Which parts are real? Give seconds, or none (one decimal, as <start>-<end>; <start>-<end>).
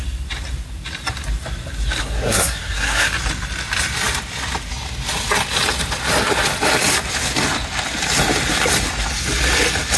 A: 0.0-2.0; 3.1-10.0